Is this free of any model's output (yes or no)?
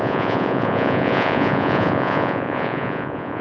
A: no